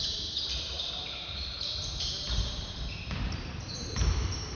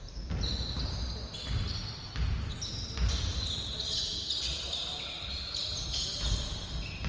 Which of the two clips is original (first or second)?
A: second